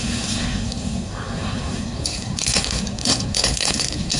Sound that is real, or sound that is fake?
fake